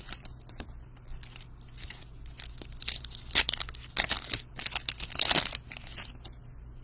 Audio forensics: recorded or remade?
recorded